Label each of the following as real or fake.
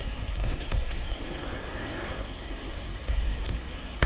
fake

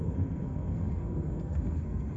fake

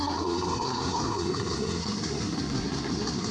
fake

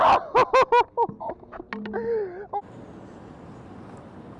real